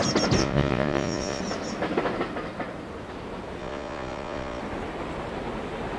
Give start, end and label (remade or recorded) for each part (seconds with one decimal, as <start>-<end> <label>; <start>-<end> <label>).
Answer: 0.0-0.4 recorded; 0.4-1.4 remade; 1.4-3.6 recorded; 3.6-4.6 remade; 4.6-6.0 recorded